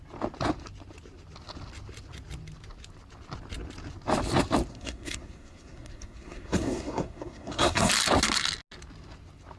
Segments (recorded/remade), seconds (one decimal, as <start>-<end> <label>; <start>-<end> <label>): 0.0-4.7 recorded; 4.7-7.9 remade; 7.9-9.6 recorded